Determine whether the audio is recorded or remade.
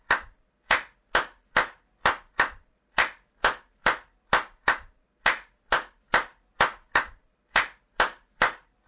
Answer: recorded